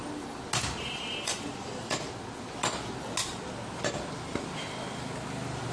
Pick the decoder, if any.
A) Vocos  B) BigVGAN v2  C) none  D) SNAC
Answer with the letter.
C